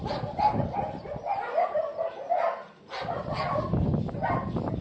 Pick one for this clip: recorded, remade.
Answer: recorded